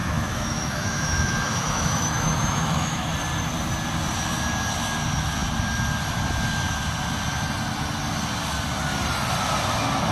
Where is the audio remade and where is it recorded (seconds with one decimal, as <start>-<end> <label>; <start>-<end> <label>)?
0.0-3.1 remade; 3.1-10.1 recorded

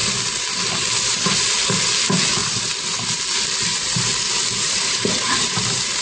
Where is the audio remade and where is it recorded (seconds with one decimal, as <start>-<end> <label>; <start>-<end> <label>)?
0.0-0.6 remade; 0.6-2.4 recorded; 2.4-6.0 remade

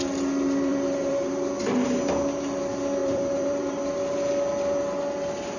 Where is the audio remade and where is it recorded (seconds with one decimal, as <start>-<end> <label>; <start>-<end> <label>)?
0.0-0.7 recorded; 0.7-1.3 remade; 1.3-3.0 recorded; 3.0-3.8 remade; 3.8-5.6 recorded

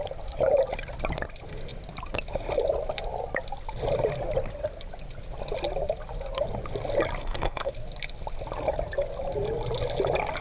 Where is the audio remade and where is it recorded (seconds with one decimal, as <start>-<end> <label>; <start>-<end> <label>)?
0.0-7.2 recorded; 7.2-7.7 remade; 7.7-10.4 recorded

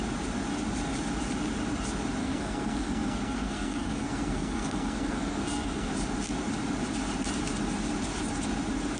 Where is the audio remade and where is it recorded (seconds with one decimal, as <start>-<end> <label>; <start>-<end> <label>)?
0.0-2.2 recorded; 2.2-5.9 remade; 5.9-9.0 recorded